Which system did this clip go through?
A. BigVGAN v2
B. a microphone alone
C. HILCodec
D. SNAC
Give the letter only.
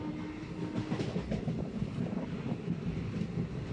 B